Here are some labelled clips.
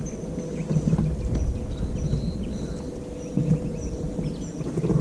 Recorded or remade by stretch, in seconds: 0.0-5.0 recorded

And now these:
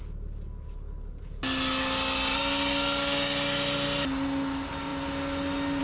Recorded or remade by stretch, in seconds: 0.0-5.8 recorded

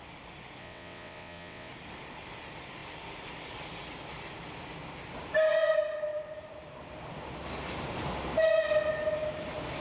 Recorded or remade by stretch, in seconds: 0.0-0.6 recorded; 0.6-1.7 remade; 1.7-9.8 recorded

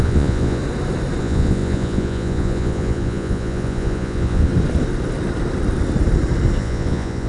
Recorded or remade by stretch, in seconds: 0.0-0.6 remade; 0.6-1.2 recorded; 1.2-4.5 remade; 4.5-6.6 recorded; 6.6-7.3 remade